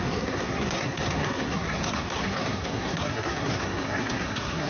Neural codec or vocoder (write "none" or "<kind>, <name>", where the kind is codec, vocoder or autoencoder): codec, SNAC